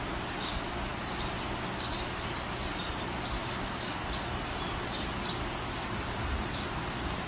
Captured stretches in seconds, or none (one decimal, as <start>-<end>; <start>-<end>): 0.0-7.3